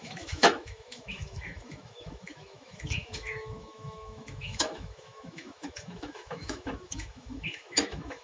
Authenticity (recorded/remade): remade